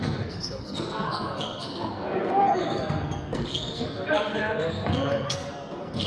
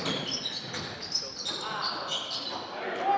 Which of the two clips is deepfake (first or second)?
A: first